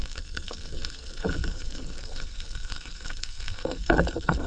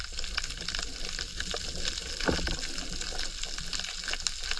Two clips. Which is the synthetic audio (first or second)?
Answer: first